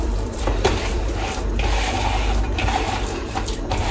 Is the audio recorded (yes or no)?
no